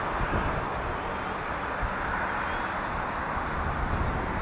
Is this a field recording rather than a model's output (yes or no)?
yes